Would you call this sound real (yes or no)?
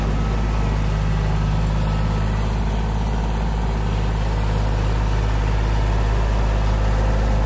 yes